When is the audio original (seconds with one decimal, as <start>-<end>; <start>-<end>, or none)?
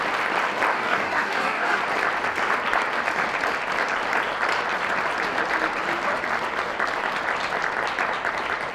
0.0-0.7; 1.8-8.7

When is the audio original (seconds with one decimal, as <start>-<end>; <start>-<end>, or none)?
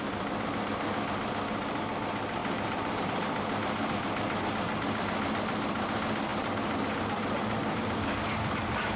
0.0-2.4; 3.0-6.3; 7.0-9.0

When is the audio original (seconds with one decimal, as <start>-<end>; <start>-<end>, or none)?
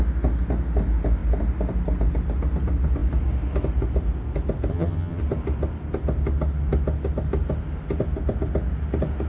0.0-4.7; 5.2-9.3